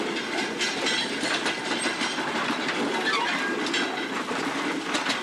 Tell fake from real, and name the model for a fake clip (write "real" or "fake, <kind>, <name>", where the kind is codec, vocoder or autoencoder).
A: real